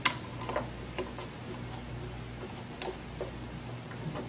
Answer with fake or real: real